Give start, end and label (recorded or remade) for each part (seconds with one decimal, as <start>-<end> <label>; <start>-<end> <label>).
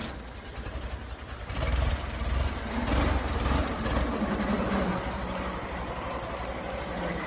0.0-1.9 remade; 1.9-7.3 recorded